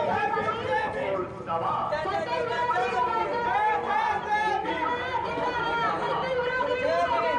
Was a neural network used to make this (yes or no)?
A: no